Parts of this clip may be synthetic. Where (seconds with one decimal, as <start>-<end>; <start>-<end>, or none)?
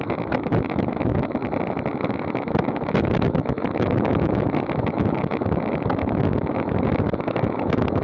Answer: 0.0-1.4; 1.9-8.0